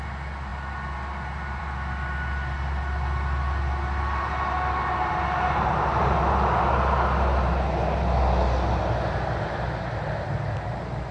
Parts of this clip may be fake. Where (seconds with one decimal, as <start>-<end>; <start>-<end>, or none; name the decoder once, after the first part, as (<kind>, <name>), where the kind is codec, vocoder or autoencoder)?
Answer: none